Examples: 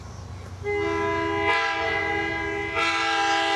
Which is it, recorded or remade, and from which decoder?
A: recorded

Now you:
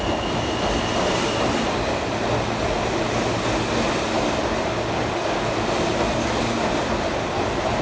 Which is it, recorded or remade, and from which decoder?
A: recorded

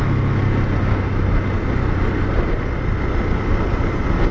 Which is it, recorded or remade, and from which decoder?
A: recorded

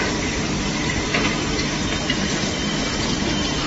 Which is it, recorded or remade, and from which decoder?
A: remade, vocoder, BigVGAN v2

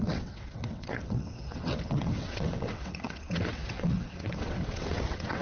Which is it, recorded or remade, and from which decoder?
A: remade, vocoder, WaveNeXt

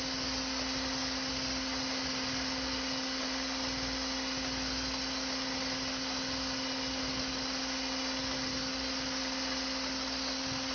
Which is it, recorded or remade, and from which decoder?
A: recorded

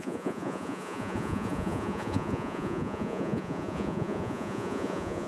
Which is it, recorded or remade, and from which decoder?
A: remade, vocoder, Vocos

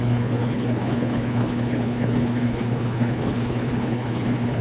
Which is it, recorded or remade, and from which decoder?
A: remade, codec, HILCodec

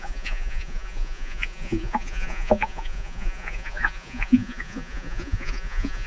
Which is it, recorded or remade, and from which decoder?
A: remade, vocoder, Vocos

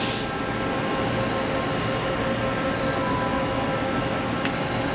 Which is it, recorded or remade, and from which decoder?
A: recorded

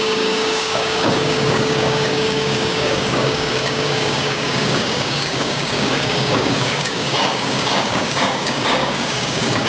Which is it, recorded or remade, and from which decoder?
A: remade, codec, DAC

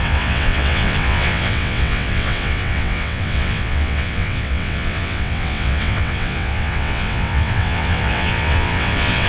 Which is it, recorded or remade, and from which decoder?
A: remade, vocoder, WaveNeXt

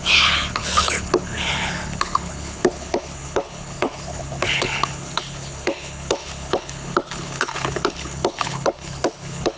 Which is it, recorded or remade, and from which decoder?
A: remade, codec, HILCodec